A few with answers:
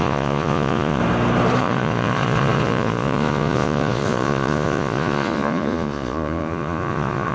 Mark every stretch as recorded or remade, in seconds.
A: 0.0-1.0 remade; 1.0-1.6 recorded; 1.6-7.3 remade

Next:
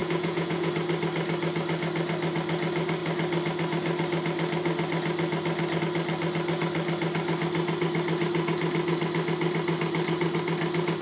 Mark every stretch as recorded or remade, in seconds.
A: 0.0-0.7 remade; 0.7-11.0 recorded